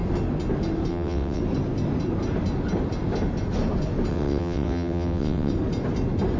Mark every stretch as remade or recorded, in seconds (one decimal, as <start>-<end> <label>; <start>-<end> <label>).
0.0-0.9 recorded; 0.9-1.4 remade; 1.4-4.1 recorded; 4.1-5.5 remade; 5.5-6.4 recorded